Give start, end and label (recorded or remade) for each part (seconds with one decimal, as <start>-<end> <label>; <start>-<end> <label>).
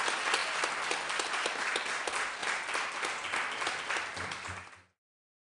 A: 0.0-5.6 recorded